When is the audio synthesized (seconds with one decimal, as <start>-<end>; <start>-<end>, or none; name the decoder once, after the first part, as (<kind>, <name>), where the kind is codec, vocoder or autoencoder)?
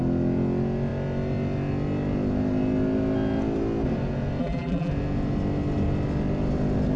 4.4-4.9 (vocoder, BigVGAN v2)